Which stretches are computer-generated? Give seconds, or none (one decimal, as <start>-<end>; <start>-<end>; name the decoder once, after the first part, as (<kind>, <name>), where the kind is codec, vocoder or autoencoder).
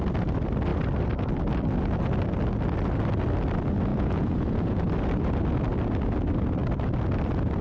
3.9-4.9 (vocoder, Vocos)